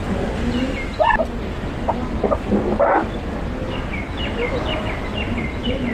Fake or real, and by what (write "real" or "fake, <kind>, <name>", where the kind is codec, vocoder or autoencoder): real